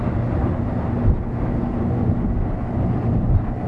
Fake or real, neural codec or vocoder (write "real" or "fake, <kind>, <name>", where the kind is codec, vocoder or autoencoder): real